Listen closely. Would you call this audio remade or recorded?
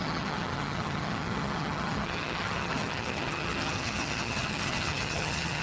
remade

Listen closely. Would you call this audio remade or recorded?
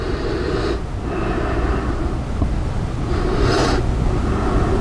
recorded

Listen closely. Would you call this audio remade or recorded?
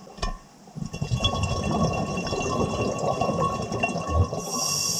recorded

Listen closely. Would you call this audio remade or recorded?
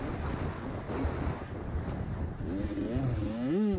recorded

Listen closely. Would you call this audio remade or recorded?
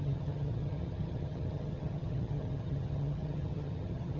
remade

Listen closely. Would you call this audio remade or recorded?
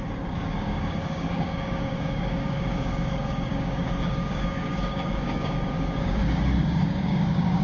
remade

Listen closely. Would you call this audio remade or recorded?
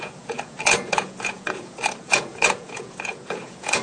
remade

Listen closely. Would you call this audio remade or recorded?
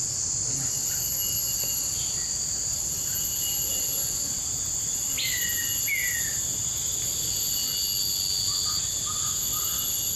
recorded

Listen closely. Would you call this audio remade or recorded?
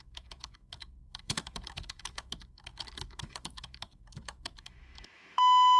remade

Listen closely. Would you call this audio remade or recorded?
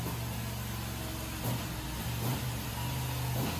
recorded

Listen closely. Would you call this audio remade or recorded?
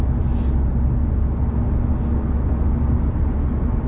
recorded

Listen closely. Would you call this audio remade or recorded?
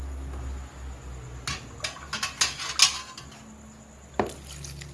recorded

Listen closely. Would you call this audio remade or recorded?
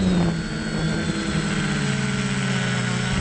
recorded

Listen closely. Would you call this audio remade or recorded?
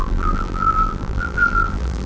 remade